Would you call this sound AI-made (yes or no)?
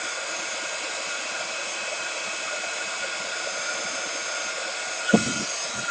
no